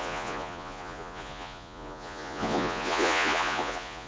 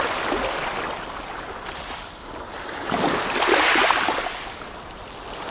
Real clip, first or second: second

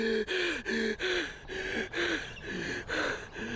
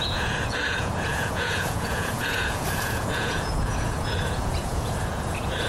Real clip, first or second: first